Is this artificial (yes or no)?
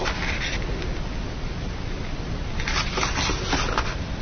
no